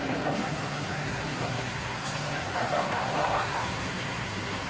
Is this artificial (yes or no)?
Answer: yes